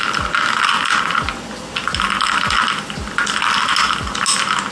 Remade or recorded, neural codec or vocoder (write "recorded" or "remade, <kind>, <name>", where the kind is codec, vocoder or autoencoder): recorded